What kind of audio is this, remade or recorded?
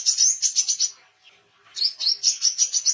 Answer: recorded